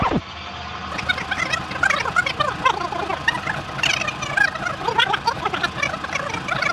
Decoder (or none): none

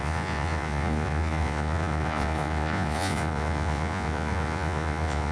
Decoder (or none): vocoder, Vocos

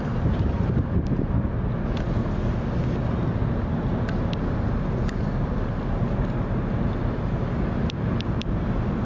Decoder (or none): none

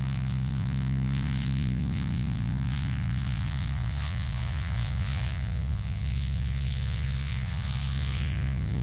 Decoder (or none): vocoder, Vocos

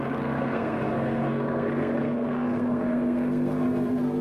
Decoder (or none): codec, SNAC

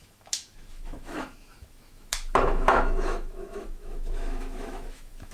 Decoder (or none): autoencoder, DAC-VAE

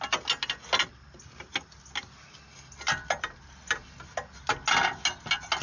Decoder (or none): none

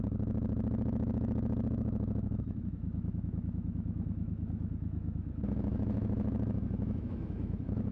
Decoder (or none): autoencoder, DAC-VAE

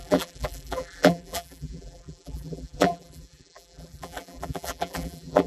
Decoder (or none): vocoder, BigVGAN v2